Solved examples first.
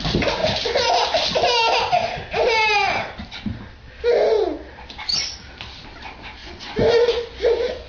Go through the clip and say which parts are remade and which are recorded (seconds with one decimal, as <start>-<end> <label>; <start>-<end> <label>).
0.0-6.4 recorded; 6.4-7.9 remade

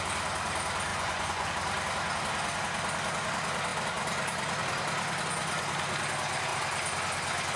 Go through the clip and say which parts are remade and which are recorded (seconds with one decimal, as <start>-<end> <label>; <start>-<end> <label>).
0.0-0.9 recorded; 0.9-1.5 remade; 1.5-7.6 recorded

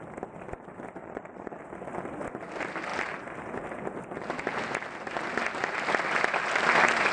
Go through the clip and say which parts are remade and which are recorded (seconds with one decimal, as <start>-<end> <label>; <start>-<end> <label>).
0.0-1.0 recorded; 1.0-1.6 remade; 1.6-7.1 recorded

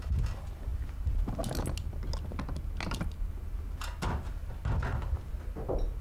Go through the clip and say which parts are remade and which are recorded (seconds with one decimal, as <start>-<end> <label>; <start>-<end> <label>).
0.0-6.0 recorded

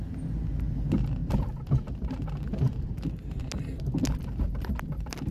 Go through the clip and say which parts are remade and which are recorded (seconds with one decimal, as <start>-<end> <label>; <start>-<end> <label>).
0.0-5.3 recorded